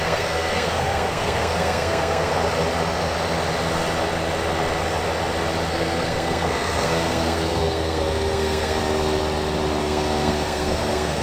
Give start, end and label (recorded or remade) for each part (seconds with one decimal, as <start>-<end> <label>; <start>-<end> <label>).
0.0-2.3 remade; 2.3-5.7 recorded; 5.7-8.8 remade; 8.8-9.8 recorded; 9.8-11.2 remade